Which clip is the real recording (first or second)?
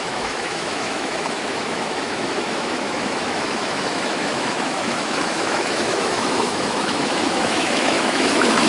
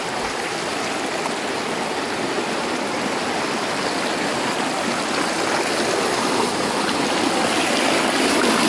second